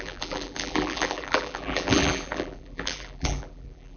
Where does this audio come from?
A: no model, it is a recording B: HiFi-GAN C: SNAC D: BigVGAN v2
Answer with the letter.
D